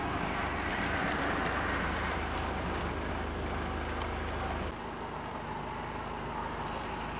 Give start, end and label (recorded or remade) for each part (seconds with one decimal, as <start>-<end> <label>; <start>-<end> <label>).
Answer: 0.0-3.1 remade; 3.1-7.2 recorded